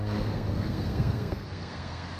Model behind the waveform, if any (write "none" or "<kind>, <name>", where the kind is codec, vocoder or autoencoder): codec, SNAC